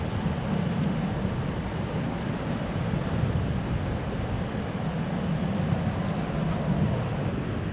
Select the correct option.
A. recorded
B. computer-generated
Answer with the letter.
A